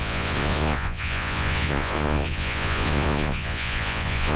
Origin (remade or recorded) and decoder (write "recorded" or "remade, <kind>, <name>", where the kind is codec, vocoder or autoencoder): remade, vocoder, Vocos